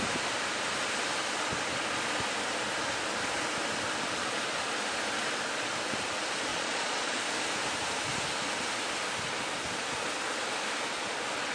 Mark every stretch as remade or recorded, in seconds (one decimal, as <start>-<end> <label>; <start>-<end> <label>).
0.0-6.5 recorded; 6.5-7.2 remade; 7.2-11.5 recorded